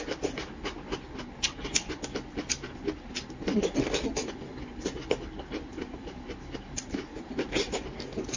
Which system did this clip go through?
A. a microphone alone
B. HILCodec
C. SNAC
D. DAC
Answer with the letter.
A